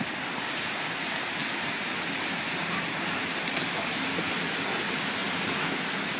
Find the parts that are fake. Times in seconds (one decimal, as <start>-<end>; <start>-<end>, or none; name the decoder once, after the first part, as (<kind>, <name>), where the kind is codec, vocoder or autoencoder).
none